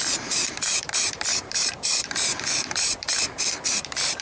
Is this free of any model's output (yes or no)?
no